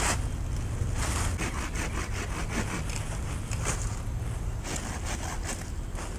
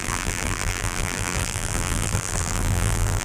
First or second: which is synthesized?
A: second